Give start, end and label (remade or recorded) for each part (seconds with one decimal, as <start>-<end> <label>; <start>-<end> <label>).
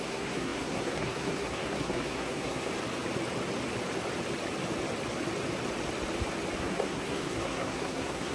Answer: 0.0-2.7 remade; 2.7-6.6 recorded; 6.6-8.3 remade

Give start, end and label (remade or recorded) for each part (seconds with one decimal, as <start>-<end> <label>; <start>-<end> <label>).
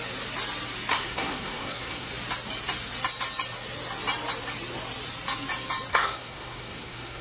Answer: 0.0-0.9 recorded; 0.9-2.1 remade; 2.1-5.9 recorded; 5.9-7.2 remade